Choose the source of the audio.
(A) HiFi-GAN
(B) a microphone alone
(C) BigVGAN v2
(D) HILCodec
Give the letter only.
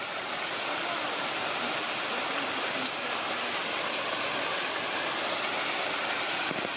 B